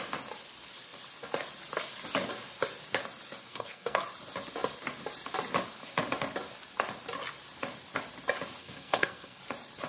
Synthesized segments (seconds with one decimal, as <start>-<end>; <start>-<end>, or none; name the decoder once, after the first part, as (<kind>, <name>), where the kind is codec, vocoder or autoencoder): 3.4-4.0 (codec, SNAC); 8.6-9.4